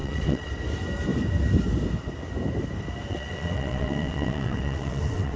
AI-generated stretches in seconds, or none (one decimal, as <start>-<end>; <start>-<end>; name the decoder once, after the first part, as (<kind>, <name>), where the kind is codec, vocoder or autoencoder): 0.0-0.5 (vocoder, WaveNeXt); 3.1-5.4